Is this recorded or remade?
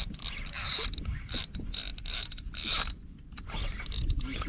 recorded